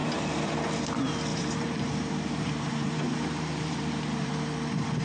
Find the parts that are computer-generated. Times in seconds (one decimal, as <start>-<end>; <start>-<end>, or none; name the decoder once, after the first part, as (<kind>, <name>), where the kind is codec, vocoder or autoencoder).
1.3-4.3 (vocoder, BigVGAN v2)